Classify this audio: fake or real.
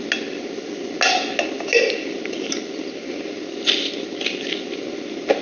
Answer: real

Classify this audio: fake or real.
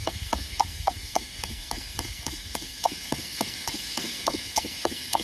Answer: fake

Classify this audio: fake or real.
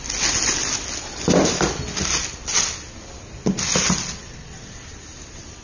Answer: real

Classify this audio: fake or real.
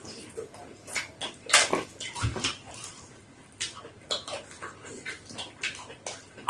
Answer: real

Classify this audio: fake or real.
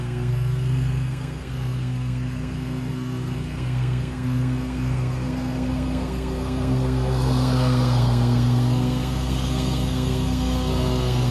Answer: fake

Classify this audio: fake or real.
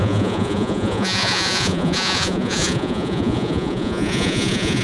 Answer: fake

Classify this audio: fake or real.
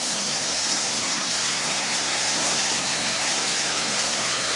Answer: fake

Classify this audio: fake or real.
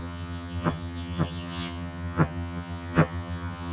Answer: fake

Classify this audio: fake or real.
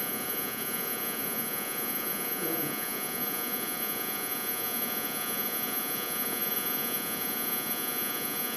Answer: fake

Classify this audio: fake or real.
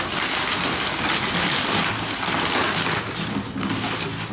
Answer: real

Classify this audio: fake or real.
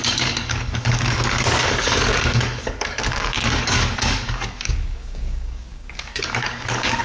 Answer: fake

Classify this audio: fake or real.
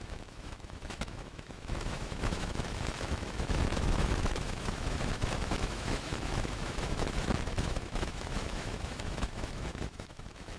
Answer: fake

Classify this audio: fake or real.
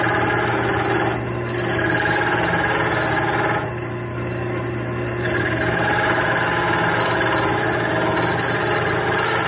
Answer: real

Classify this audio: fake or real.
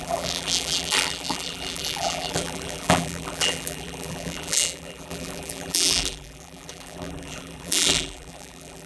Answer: fake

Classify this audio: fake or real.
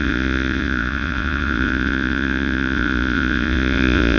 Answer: fake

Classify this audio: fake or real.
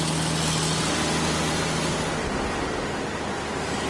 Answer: real